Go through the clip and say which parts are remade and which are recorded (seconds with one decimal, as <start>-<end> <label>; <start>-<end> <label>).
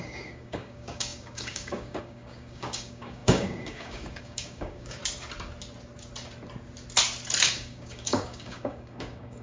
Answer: 0.0-5.0 remade; 5.0-7.4 recorded; 7.4-9.4 remade